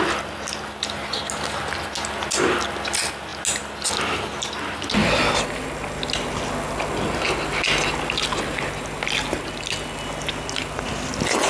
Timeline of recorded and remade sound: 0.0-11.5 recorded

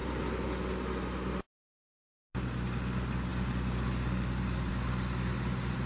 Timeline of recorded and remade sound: 0.0-5.9 recorded

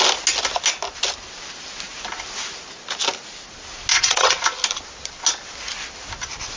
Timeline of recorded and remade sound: 0.0-3.9 recorded; 3.9-4.4 remade; 4.4-6.6 recorded

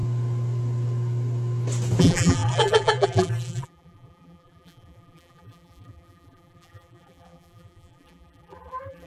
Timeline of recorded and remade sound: 0.0-2.0 recorded; 2.0-9.1 remade

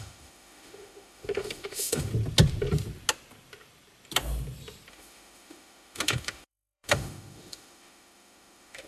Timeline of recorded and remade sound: 0.0-2.1 remade; 2.1-4.9 recorded; 4.9-8.9 remade

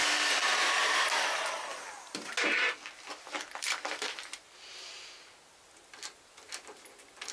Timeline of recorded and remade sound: 0.0-2.6 recorded; 2.6-5.2 remade; 5.2-7.3 recorded

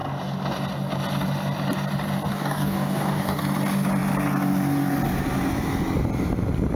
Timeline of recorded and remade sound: 0.0-2.3 recorded; 2.3-3.4 remade; 3.4-6.8 recorded

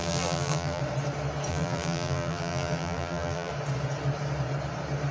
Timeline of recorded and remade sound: 0.0-0.8 remade; 0.8-1.5 recorded; 1.5-3.5 remade; 3.5-5.1 recorded